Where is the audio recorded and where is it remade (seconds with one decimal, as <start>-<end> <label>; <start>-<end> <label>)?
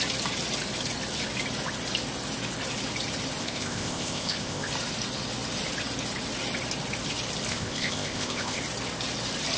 0.0-3.4 recorded; 3.4-4.7 remade; 4.7-7.5 recorded; 7.5-8.6 remade; 8.6-9.6 recorded